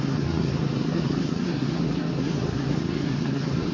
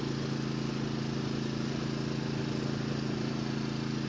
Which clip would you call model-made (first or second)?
first